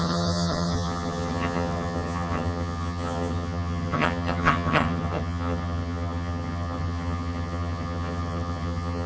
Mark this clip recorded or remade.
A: remade